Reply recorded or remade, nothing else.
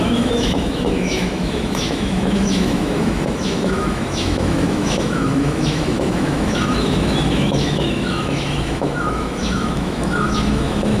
remade